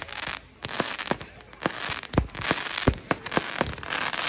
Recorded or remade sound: recorded